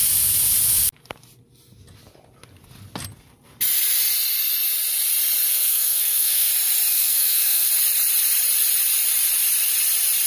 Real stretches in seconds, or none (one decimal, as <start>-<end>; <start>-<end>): 0.0-5.5; 6.5-6.9; 7.7-10.3